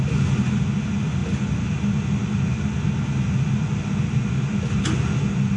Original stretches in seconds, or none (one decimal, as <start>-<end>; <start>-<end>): 0.0-5.6